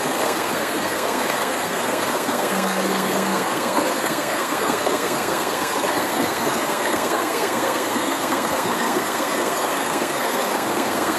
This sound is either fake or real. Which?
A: fake